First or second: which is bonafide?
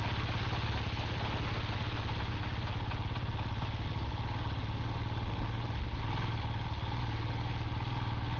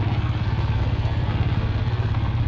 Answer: first